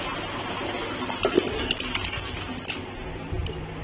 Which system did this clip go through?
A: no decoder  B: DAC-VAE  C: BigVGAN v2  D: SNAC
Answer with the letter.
A